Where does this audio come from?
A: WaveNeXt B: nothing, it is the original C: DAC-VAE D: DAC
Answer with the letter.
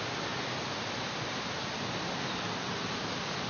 B